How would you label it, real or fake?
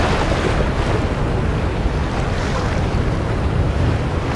real